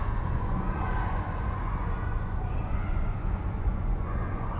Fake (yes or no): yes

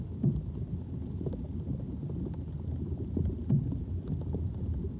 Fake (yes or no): no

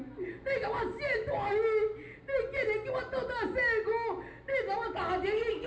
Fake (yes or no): no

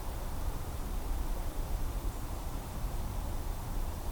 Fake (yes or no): yes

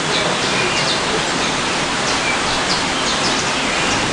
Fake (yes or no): no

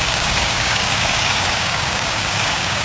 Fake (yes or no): yes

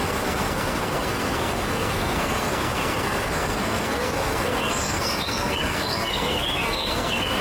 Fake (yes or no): yes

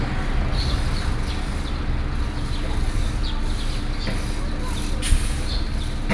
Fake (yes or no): no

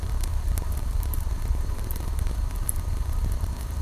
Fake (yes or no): yes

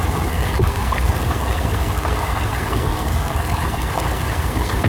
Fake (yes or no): yes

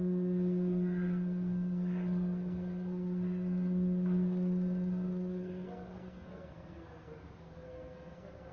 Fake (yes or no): yes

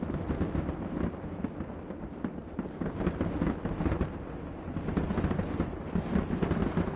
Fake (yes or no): no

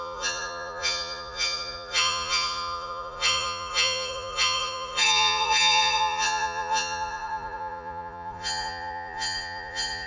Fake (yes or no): yes